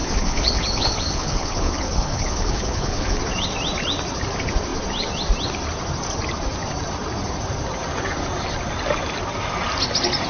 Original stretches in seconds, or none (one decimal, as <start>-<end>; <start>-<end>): 3.2-10.3